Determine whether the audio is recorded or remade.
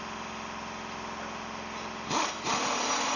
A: recorded